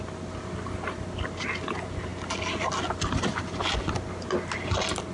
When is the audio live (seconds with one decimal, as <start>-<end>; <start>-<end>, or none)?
0.0-5.1